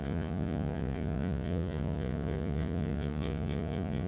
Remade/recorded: remade